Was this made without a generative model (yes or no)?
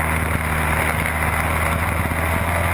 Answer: yes